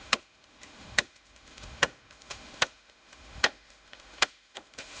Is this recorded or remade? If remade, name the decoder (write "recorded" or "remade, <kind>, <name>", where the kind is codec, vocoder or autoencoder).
remade, autoencoder, DAC-VAE